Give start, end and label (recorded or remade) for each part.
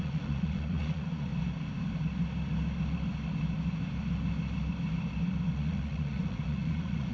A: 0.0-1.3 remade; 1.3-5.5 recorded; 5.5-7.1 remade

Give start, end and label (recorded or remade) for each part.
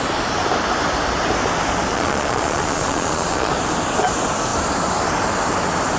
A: 0.0-1.9 recorded; 1.9-3.5 remade; 3.5-6.0 recorded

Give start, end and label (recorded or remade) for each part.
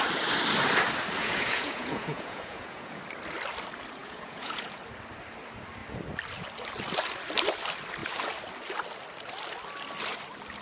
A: 0.0-1.2 recorded; 1.2-3.0 remade; 3.0-4.0 recorded; 4.0-4.8 remade; 4.8-10.6 recorded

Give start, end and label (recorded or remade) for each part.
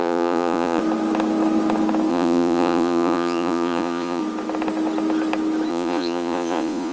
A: 0.0-0.8 remade; 0.8-2.1 recorded; 2.1-4.2 remade; 4.2-5.7 recorded; 5.7-6.9 remade